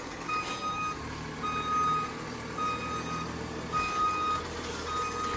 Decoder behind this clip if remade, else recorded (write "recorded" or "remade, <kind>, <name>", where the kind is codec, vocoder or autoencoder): recorded